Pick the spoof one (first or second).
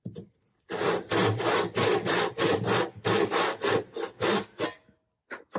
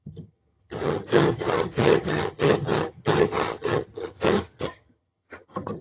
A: second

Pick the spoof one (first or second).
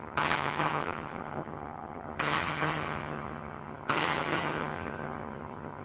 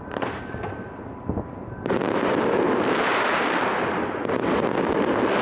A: first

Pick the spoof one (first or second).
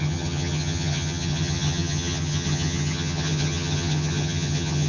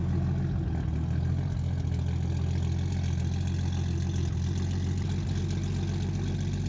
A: first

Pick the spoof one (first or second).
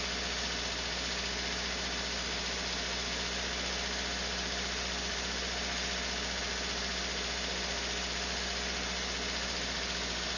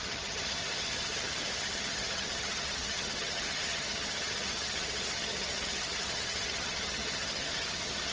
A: second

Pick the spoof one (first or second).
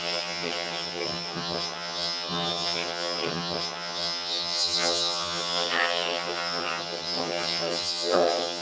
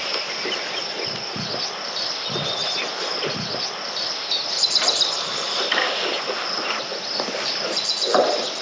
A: first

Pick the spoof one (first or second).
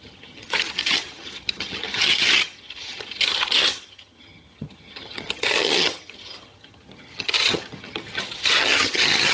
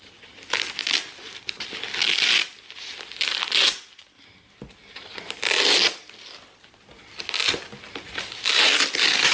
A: first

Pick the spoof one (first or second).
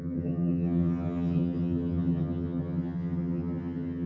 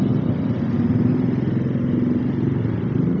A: first